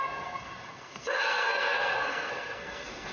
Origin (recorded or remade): remade